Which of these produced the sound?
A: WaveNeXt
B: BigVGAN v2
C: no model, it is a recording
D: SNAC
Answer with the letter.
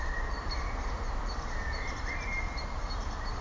C